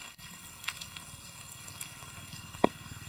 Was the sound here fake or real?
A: fake